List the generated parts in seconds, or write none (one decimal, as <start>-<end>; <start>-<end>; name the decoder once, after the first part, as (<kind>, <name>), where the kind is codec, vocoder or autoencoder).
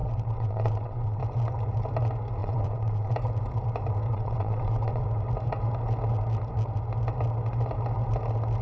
0.0-1.2 (vocoder, WaveNeXt); 2.4-3.1; 4.1-5.0